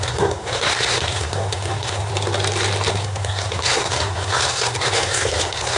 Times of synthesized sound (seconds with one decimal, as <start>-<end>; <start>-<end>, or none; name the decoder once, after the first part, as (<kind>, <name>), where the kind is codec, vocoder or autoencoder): 0.0-2.1 (codec, SNAC); 2.9-5.8